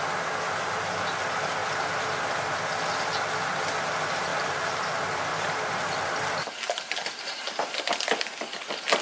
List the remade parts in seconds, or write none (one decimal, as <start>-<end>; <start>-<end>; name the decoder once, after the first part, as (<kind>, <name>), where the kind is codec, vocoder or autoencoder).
4.3-4.8 (vocoder, BigVGAN v2); 5.3-7.7